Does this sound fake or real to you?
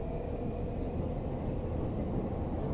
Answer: real